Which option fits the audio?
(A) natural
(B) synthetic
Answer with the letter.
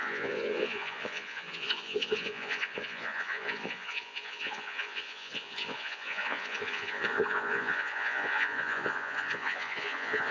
B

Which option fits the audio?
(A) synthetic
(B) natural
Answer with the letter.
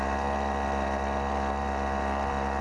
B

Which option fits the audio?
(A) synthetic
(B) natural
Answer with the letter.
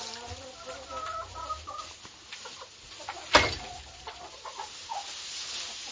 B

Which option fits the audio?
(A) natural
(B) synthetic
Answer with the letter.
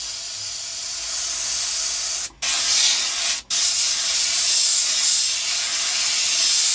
A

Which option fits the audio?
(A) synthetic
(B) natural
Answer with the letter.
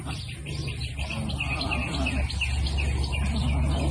B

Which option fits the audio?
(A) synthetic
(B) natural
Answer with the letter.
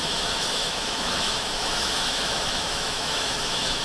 A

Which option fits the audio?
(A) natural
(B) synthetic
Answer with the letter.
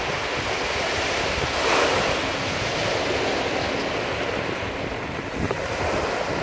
A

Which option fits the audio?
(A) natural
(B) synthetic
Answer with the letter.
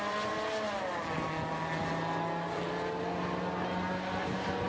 A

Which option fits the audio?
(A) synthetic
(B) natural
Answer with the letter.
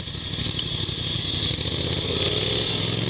B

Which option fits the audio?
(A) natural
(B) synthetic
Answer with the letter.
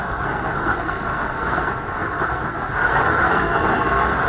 B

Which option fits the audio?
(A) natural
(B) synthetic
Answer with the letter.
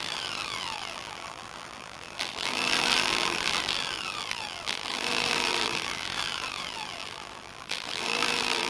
B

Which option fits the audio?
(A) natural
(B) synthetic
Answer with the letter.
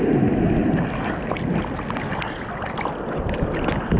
A